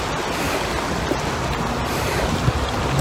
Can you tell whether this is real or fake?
real